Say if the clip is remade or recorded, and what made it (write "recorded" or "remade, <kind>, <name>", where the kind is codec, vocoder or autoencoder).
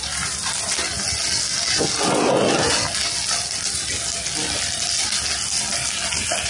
recorded